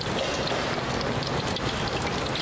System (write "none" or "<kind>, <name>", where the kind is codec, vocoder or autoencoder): vocoder, BigVGAN v2